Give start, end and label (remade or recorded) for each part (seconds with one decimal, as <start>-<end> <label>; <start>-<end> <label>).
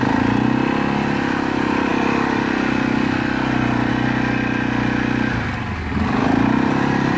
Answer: 0.0-7.2 recorded